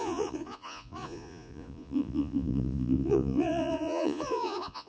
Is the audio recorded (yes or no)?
no